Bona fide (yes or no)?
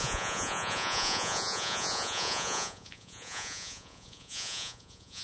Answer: no